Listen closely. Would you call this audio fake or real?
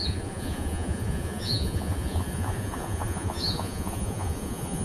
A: fake